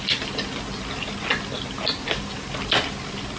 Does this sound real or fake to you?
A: real